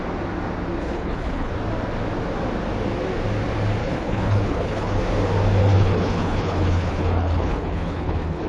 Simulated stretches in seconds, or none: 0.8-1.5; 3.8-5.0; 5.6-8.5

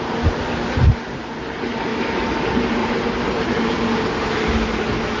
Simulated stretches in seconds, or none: 1.9-2.4; 2.8-3.6